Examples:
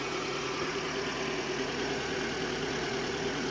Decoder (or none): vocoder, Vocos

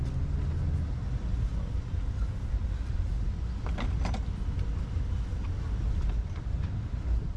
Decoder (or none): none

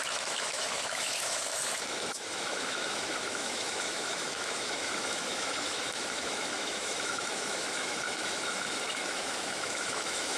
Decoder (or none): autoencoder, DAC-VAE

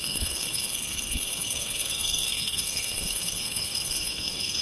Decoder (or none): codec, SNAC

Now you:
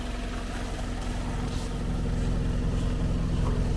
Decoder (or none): none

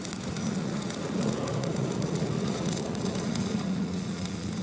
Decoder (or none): vocoder, Vocos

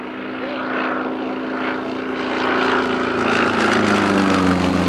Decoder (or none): none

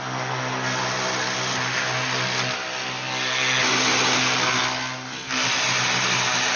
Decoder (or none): none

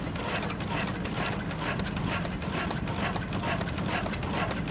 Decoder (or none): none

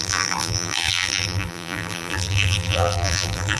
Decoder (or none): vocoder, BigVGAN v2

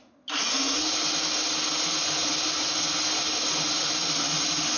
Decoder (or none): none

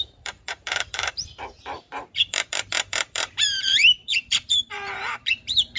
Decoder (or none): vocoder, BigVGAN v2